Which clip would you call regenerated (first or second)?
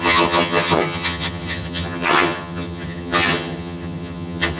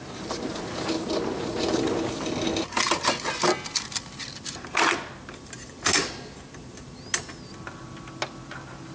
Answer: first